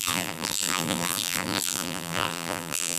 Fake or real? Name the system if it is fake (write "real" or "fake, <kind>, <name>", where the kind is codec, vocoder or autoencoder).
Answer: fake, vocoder, BigVGAN v2